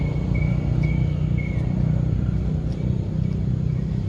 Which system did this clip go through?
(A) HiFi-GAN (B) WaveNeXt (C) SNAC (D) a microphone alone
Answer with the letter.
D